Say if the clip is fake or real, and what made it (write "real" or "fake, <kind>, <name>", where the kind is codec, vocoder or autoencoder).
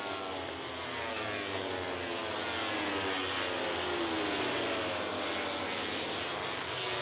real